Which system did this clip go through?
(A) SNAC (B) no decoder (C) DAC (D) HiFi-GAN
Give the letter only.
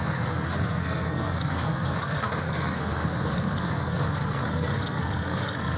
A